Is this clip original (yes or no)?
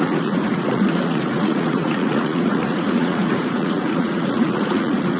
no